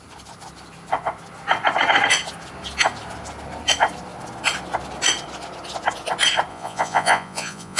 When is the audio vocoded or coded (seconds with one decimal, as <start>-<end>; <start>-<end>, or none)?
6.5-7.8